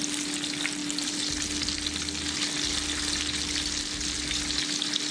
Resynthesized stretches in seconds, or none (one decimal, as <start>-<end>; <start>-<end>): none